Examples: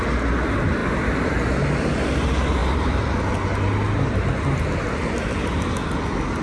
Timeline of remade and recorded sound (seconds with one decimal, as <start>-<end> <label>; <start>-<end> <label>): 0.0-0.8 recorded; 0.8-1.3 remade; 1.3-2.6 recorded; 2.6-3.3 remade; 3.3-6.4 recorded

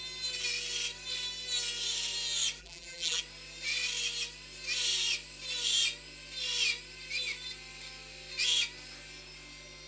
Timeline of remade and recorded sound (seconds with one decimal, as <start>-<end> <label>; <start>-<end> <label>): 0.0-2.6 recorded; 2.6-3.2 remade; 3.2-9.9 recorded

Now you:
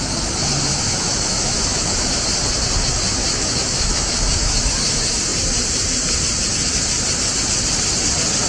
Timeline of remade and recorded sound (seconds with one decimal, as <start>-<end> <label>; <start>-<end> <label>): 0.0-0.7 recorded; 0.7-2.2 remade; 2.2-3.2 recorded; 3.2-4.6 remade; 4.6-8.5 recorded